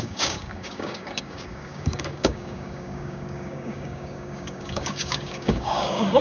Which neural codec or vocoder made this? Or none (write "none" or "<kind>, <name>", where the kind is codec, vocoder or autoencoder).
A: codec, DAC